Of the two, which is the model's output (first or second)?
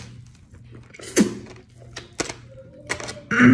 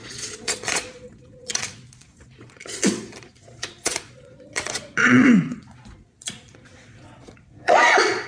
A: second